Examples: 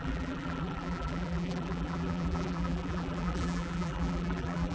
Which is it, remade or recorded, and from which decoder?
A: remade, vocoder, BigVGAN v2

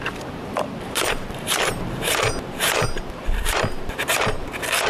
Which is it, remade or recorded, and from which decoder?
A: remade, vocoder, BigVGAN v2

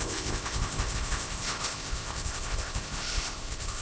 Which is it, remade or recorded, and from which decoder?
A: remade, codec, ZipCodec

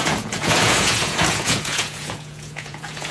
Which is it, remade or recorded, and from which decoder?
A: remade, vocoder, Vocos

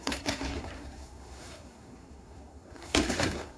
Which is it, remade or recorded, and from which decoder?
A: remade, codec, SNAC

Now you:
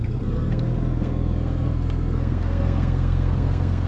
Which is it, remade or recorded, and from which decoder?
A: remade, codec, SNAC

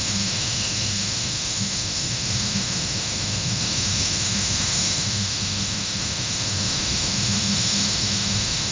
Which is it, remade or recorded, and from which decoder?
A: remade, autoencoder, DAC-VAE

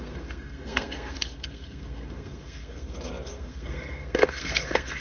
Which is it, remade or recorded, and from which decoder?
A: remade, codec, SNAC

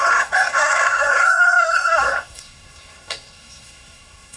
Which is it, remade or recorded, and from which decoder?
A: remade, codec, SNAC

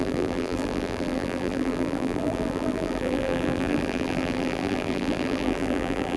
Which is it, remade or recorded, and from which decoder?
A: remade, vocoder, BigVGAN v2